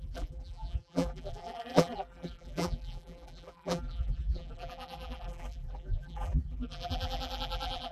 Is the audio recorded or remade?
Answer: remade